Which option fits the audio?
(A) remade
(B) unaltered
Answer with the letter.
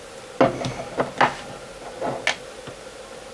B